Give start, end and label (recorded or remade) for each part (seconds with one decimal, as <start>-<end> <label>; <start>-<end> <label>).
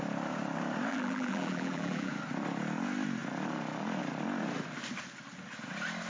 0.0-0.9 recorded; 0.9-2.1 remade; 2.1-6.1 recorded